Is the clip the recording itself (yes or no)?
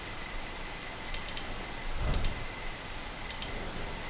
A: yes